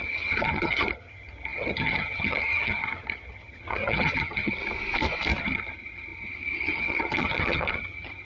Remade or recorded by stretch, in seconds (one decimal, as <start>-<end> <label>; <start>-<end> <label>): 0.0-4.6 remade; 4.6-5.4 recorded; 5.4-8.2 remade